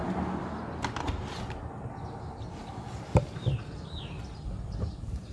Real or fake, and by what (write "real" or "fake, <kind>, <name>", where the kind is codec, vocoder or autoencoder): real